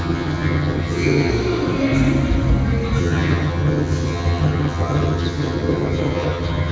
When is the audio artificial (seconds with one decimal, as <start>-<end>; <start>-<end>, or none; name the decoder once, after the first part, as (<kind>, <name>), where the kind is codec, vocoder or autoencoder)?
0.0-1.3 (vocoder, HiFi-GAN); 3.0-6.7